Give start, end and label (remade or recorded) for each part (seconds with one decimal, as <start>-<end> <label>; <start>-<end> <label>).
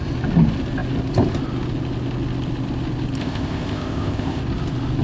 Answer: 0.0-3.2 recorded; 3.2-4.4 remade; 4.4-5.0 recorded